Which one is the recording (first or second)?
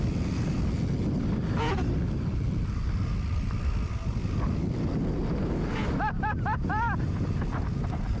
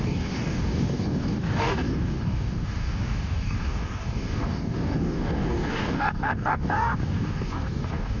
first